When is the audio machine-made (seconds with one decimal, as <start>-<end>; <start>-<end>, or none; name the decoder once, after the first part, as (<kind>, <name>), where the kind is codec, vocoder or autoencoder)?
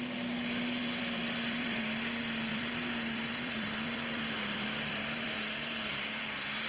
0.8-1.8 (vocoder, BigVGAN v2); 2.5-6.2